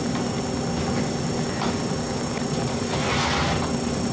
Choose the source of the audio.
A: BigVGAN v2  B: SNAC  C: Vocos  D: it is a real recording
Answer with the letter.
D